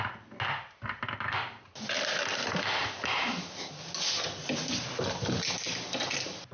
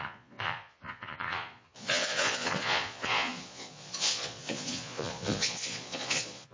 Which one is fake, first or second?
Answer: second